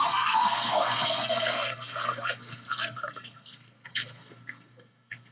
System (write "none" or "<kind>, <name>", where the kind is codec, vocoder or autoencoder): codec, SNAC